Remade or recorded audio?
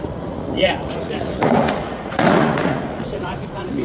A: remade